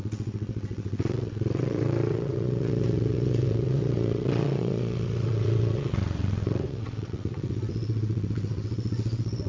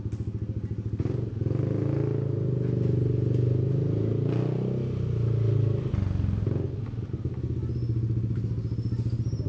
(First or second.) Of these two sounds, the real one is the second